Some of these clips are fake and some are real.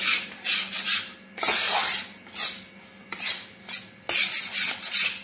real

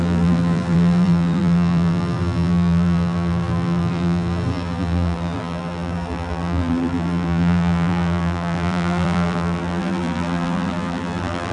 fake